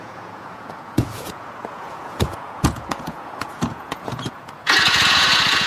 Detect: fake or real fake